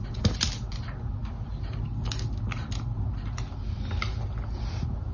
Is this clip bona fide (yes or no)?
yes